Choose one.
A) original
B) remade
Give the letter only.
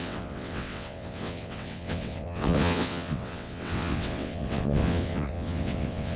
B